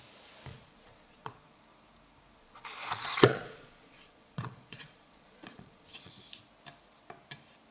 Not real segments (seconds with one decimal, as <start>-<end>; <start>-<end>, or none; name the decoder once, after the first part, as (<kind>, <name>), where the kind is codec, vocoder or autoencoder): 0.5-1.6 (vocoder, Vocos); 2.4-6.1